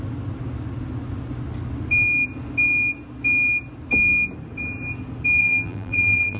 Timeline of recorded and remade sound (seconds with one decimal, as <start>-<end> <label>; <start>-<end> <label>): 0.0-5.4 recorded; 5.4-6.4 remade